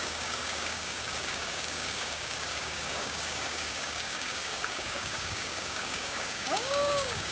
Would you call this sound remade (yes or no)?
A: yes